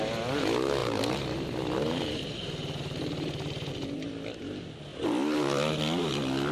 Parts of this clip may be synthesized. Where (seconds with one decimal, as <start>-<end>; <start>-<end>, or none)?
0.8-3.7